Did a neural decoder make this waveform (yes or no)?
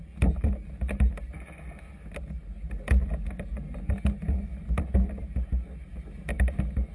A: no